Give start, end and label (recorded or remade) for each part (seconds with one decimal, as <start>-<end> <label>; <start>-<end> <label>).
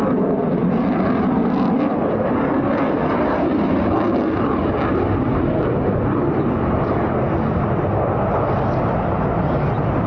0.0-10.1 recorded